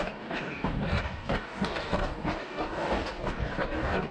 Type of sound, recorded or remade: remade